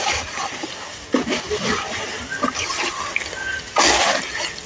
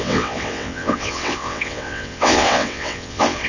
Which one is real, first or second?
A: first